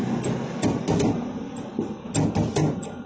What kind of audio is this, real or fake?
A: real